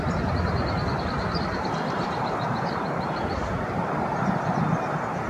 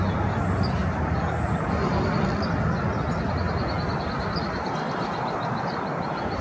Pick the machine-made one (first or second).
first